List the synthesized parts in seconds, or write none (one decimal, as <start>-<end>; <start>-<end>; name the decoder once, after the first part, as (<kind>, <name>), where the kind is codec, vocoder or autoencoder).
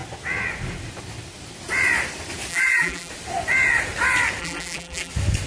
2.5-3.1 (vocoder, BigVGAN v2); 4.4-5.1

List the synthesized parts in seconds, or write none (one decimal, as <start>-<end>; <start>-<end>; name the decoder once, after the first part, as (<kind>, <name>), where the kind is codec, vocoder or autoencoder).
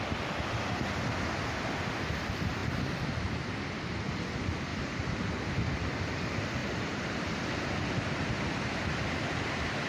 4.7-5.3 (vocoder, BigVGAN v2); 6.6-7.7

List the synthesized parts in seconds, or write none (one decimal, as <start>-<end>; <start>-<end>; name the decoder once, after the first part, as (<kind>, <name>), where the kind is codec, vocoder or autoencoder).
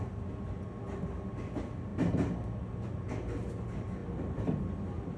none